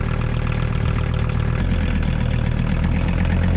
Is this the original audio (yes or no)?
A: yes